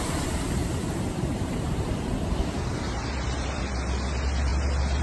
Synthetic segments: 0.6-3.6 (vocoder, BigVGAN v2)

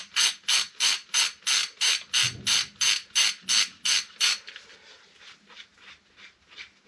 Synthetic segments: none

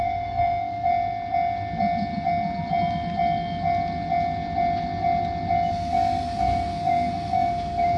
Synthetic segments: 0.0-0.9 (codec, SNAC); 5.7-8.0

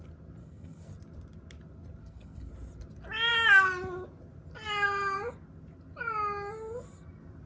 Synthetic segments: 0.4-0.9 (codec, SNAC); 2.0-2.5